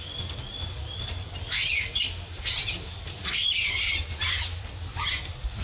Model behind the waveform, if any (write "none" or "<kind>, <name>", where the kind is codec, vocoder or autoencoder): none